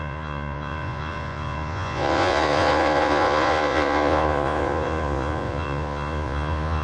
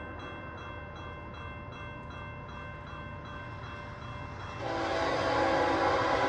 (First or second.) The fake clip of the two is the first